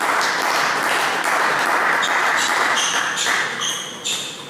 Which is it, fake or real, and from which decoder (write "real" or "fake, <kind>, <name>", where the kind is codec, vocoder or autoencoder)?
real